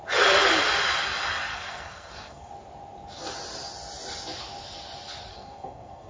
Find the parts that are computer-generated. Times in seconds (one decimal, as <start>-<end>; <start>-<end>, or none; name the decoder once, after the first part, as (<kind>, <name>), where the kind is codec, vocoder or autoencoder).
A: 1.5-2.5 (codec, SNAC); 5.3-6.1